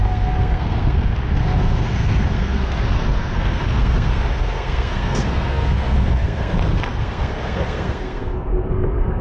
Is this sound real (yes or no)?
no